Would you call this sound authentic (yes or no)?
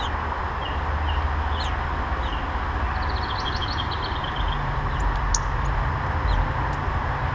yes